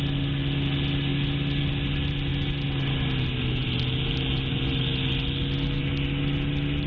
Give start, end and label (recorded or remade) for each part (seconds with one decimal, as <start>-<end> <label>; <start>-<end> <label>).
0.0-6.9 recorded